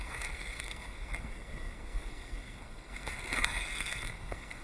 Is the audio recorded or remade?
remade